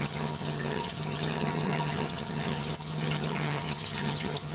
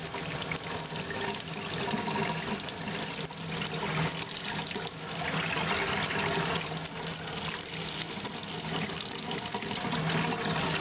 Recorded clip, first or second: second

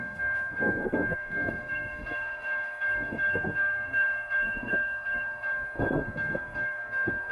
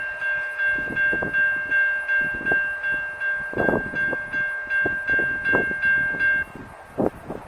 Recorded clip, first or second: second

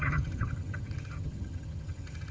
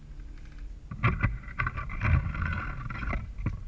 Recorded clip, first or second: second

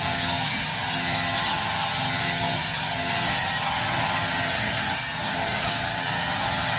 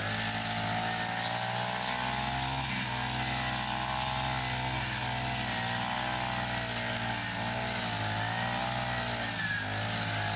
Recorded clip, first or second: second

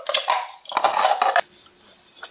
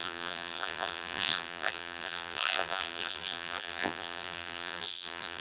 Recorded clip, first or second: first